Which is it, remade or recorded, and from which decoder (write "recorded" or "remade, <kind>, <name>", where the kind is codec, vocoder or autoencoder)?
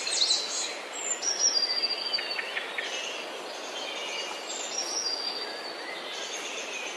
recorded